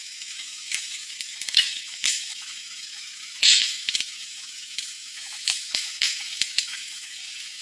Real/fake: fake